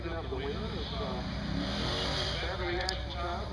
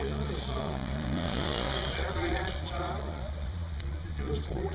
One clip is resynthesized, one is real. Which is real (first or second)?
first